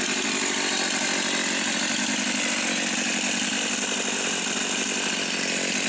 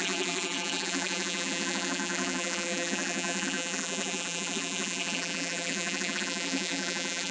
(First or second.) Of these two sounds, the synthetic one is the second